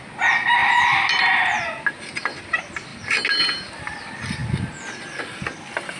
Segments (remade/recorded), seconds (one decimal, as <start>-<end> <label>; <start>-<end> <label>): 0.0-6.0 recorded